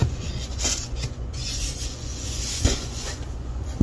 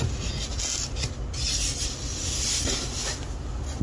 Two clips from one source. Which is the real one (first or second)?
second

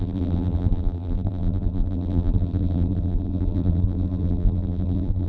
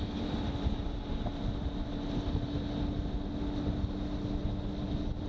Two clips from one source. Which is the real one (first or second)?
second